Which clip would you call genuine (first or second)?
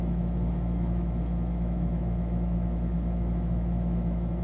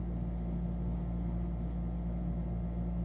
second